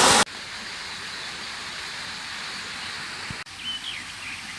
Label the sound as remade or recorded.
recorded